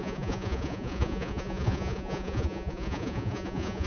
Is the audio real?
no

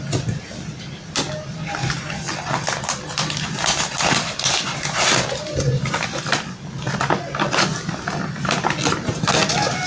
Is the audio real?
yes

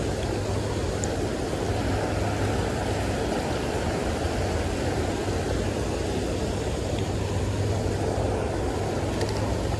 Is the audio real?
yes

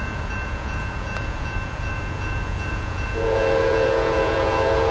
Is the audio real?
no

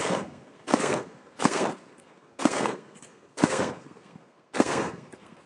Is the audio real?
no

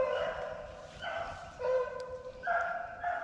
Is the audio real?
yes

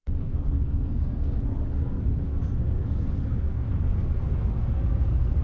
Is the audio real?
no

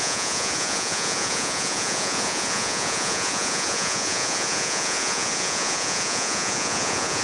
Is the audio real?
no